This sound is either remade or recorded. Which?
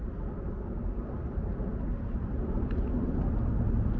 recorded